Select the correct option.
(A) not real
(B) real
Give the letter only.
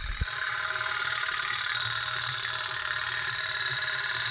A